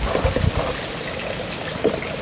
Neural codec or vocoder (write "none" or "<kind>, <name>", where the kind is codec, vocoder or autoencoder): none